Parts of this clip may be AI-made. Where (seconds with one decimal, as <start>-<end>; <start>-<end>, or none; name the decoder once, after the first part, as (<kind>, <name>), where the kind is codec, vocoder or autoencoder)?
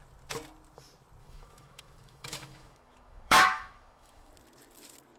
1.2-4.3 (autoencoder, DAC-VAE)